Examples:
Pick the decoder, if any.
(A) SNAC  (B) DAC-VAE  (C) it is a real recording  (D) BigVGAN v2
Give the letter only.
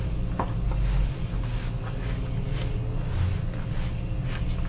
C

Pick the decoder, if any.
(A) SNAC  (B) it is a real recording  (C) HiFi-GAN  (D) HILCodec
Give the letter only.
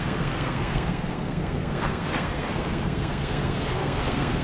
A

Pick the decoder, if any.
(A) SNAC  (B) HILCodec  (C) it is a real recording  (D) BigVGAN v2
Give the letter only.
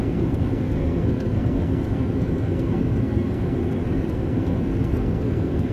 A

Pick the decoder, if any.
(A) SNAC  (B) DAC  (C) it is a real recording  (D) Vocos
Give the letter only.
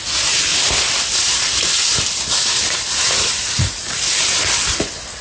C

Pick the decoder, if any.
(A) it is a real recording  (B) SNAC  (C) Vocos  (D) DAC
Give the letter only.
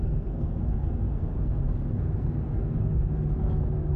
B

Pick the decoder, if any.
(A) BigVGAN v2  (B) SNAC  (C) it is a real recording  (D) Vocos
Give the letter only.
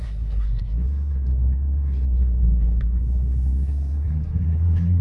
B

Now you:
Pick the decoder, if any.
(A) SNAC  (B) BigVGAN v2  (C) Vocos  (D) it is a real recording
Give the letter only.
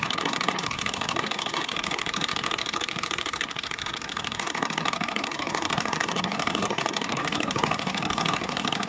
A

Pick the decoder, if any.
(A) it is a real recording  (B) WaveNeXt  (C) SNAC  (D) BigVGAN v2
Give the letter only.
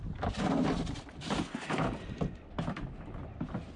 A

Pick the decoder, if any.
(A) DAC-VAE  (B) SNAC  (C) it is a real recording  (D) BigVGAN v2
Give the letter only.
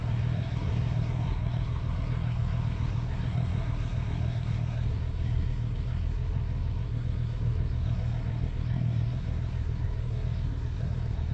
B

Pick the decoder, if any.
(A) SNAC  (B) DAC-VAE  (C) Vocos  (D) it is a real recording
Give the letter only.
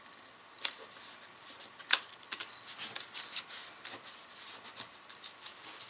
D